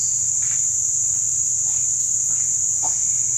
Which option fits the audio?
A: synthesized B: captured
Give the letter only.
B